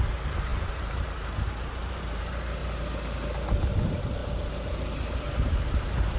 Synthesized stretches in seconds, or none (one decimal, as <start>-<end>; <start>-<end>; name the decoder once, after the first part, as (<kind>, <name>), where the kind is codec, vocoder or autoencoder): 0.0-2.6 (vocoder, BigVGAN v2); 3.8-4.2; 4.9-6.2